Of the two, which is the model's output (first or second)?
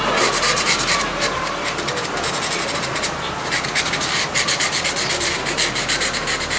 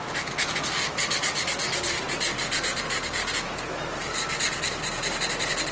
first